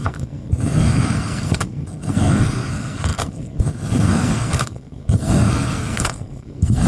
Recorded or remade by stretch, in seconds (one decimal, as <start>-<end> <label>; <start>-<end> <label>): 0.0-6.9 remade